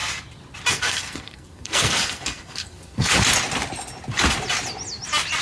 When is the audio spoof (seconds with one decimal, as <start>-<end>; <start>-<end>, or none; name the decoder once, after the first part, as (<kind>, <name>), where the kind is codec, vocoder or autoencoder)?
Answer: 0.7-3.1 (codec, SNAC)